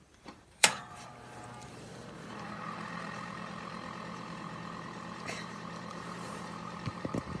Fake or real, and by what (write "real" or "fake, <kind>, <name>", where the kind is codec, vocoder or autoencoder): fake, vocoder, BigVGAN v2